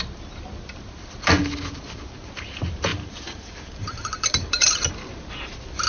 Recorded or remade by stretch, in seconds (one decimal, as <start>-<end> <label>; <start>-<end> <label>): 0.0-2.9 recorded; 2.9-4.9 remade; 4.9-5.9 recorded